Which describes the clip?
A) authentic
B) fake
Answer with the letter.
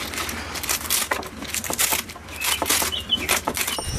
A